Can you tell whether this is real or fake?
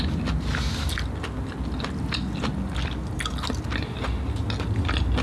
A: real